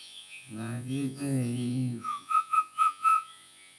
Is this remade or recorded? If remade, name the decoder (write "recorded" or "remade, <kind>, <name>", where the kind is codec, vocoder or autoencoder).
remade, vocoder, Vocos